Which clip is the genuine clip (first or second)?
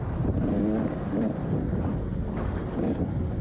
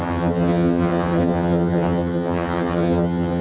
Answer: first